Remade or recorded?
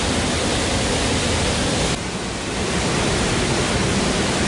recorded